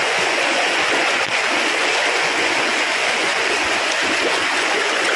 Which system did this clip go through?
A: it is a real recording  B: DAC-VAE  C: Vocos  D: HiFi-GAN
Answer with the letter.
C